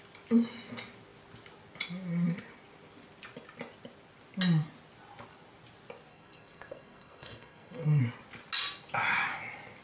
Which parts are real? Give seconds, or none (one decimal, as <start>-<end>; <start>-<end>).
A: 0.0-6.1; 8.0-9.8